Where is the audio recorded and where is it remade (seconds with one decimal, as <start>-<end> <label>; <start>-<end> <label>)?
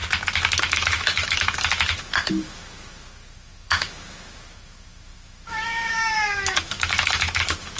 0.0-0.6 recorded; 0.6-7.8 remade